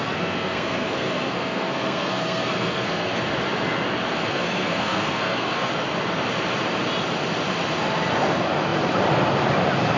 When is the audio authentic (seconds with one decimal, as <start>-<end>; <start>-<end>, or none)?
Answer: 3.2-4.3; 5.7-10.0